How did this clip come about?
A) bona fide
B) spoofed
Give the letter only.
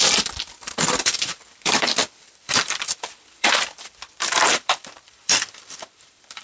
B